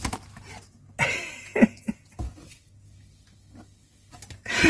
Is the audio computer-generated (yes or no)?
no